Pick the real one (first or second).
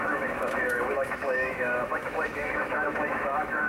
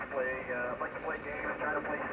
second